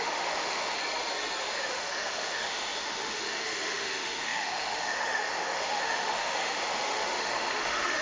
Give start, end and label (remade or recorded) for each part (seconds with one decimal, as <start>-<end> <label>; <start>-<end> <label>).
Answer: 0.0-0.8 remade; 0.8-1.4 recorded; 1.4-8.0 remade